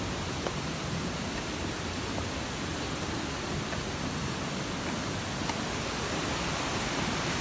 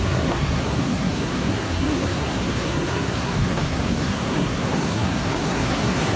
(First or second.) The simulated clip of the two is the second